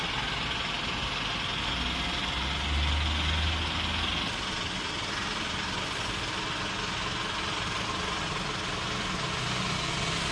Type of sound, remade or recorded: recorded